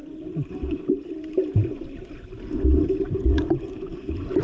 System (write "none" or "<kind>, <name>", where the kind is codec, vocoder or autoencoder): vocoder, BigVGAN v2